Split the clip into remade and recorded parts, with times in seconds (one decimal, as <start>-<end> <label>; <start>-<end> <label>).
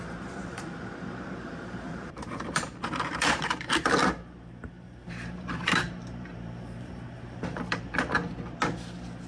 0.0-8.2 remade; 8.2-9.3 recorded